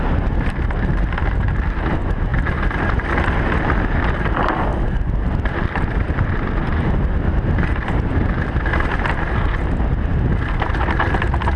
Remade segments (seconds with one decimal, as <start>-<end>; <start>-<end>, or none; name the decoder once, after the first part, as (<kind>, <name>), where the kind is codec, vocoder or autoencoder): 4.7-9.1 (vocoder, BigVGAN v2)